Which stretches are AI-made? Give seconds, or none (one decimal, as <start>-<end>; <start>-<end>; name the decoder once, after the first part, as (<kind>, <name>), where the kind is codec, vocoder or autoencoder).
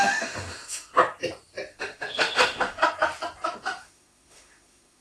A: 0.0-1.0 (autoencoder, DAC-VAE); 1.7-2.8; 3.6-5.0